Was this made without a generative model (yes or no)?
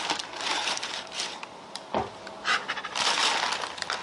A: yes